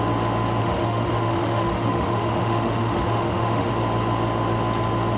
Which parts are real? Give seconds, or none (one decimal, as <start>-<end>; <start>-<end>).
0.0-0.6; 3.7-5.2